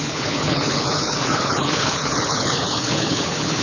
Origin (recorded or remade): remade